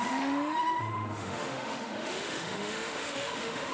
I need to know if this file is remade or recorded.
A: remade